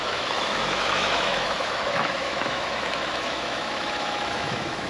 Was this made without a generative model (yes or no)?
no